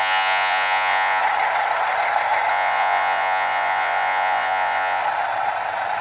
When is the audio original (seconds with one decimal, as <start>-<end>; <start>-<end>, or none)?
1.2-2.5; 5.0-6.0